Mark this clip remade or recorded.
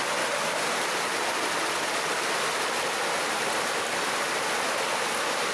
recorded